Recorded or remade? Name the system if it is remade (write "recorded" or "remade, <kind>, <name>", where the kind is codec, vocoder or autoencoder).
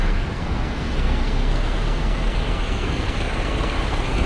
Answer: remade, codec, SNAC